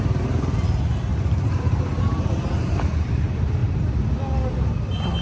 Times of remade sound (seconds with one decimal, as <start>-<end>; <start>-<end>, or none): 1.1-3.0